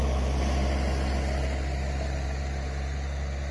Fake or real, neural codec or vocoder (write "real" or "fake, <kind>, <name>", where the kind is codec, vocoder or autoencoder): real